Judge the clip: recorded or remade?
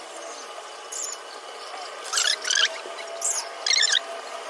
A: recorded